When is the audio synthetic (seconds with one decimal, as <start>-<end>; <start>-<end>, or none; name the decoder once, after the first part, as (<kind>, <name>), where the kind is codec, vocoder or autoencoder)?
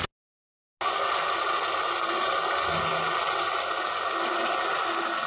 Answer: none